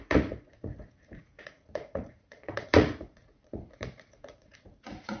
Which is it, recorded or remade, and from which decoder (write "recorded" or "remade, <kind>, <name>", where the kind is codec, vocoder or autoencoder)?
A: remade, vocoder, Vocos